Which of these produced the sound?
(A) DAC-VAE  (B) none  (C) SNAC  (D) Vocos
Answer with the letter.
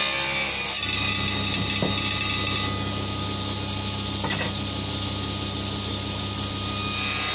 B